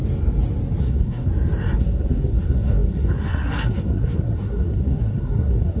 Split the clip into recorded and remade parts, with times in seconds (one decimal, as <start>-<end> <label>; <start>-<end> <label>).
0.0-0.8 recorded; 0.8-1.3 remade; 1.3-1.8 recorded; 1.8-5.8 remade

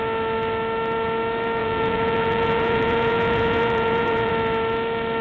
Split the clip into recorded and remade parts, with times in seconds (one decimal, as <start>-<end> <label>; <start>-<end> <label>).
0.0-1.6 recorded; 1.6-4.3 remade; 4.3-5.2 recorded

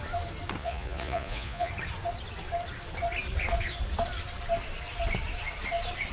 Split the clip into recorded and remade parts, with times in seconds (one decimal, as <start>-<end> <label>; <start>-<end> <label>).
0.0-0.6 recorded; 0.6-1.7 remade; 1.7-6.1 recorded